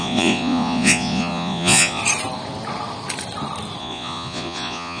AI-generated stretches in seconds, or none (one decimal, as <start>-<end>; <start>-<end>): 0.0-2.0; 3.8-5.0